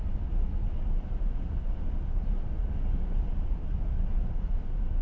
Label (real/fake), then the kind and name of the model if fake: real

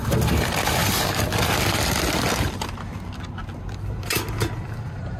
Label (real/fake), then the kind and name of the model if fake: real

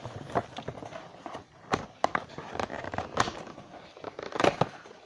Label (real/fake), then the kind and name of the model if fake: real